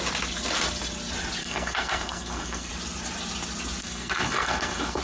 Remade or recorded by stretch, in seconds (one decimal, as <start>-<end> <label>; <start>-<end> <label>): 0.0-1.4 recorded; 1.4-2.7 remade; 2.7-3.8 recorded; 3.8-5.0 remade